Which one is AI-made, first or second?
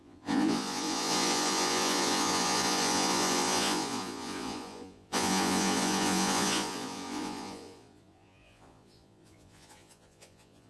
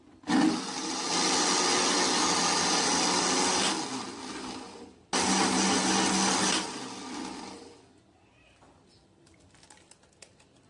first